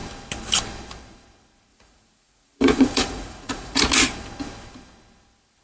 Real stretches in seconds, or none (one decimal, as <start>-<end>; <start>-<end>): 0.0-1.7; 3.8-5.6